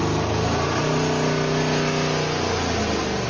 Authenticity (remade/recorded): recorded